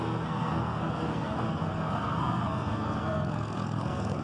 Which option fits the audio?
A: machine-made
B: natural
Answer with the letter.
A